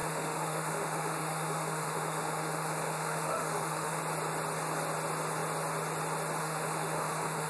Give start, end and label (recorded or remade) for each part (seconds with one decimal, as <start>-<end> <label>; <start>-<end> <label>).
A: 0.0-4.0 remade; 4.0-6.4 recorded; 6.4-7.5 remade